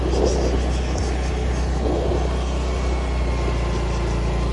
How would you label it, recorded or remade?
recorded